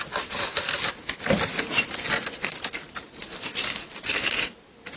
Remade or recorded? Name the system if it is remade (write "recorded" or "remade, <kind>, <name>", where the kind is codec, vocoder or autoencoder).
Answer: recorded